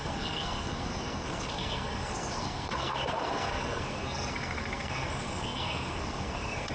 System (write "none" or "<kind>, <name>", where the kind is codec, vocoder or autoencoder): codec, SNAC